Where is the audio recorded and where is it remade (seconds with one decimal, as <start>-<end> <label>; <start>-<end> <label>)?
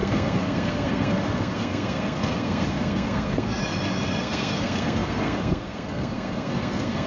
0.0-3.6 remade; 3.6-4.2 recorded; 4.2-7.1 remade